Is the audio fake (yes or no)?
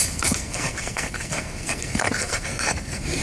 yes